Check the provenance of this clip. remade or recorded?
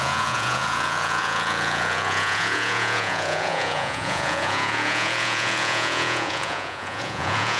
remade